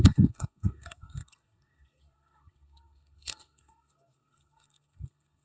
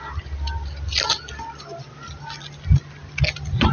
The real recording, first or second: second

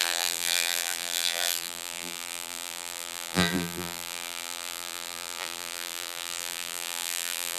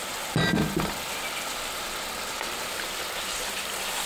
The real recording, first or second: second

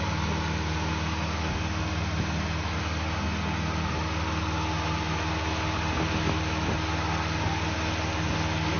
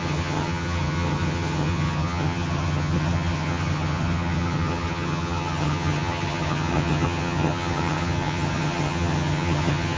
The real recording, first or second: first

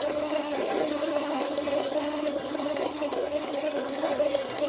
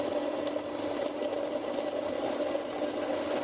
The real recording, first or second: second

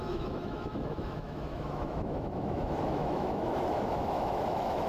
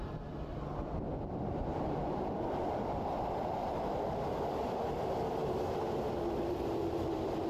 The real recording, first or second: second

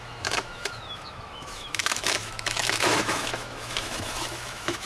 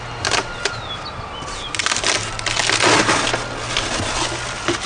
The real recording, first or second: second